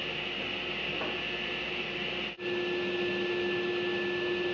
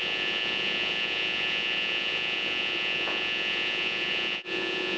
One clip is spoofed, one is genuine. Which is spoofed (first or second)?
second